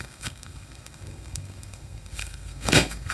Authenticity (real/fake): fake